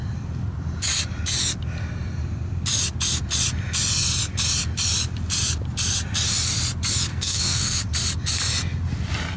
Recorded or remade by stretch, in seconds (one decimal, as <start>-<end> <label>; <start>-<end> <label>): 0.0-7.1 recorded; 7.1-7.8 remade; 7.8-9.4 recorded